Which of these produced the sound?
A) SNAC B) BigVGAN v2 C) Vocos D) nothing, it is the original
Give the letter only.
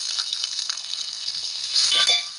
A